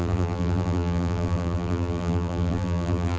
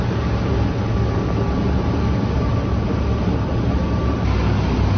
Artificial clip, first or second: first